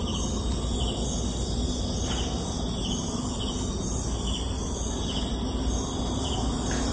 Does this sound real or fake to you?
real